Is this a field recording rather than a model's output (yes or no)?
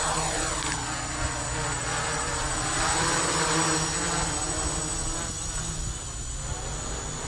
yes